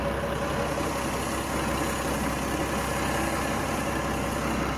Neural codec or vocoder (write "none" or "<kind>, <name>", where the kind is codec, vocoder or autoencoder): none